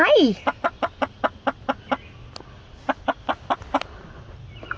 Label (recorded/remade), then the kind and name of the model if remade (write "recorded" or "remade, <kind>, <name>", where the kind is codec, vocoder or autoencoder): recorded